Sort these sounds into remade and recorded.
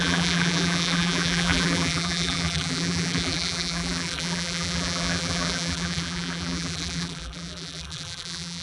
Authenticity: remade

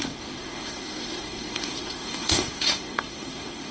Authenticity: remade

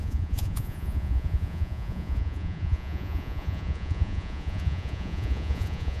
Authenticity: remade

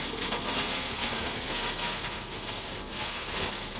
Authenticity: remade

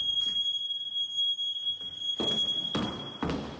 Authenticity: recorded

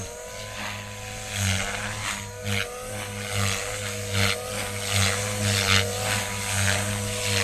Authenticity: recorded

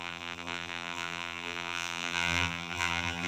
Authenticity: remade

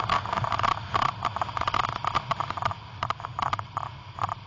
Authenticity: recorded